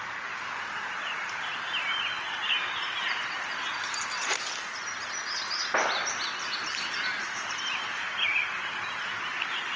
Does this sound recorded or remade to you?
recorded